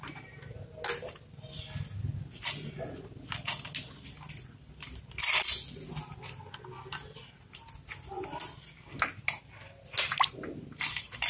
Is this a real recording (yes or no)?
yes